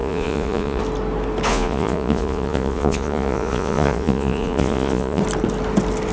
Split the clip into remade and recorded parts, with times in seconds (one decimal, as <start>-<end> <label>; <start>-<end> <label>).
0.0-0.8 remade; 0.8-1.5 recorded; 1.5-5.2 remade; 5.2-6.1 recorded